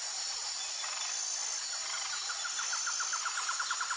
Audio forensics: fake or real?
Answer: real